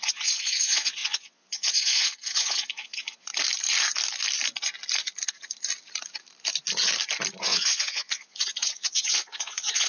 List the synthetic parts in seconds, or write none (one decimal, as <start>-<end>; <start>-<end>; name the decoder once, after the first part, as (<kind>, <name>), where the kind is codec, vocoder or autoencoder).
0.0-3.3 (vocoder, Vocos); 7.4-9.9